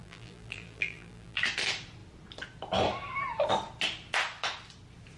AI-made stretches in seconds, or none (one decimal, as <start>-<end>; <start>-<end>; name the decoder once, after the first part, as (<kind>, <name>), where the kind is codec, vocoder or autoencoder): 0.0-1.4 (vocoder, BigVGAN v2)